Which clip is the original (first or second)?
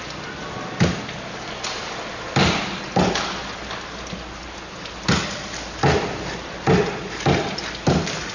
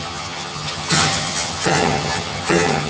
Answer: first